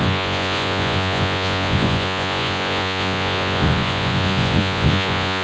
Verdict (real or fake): fake